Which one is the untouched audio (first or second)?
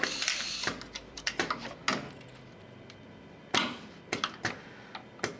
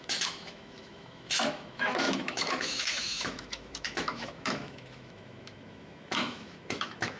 first